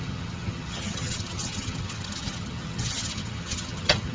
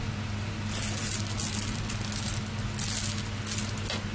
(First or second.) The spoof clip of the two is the first